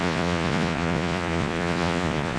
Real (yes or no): no